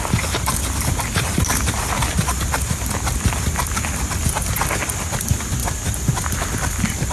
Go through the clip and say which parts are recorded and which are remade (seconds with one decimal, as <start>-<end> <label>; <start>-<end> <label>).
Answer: 0.0-7.1 recorded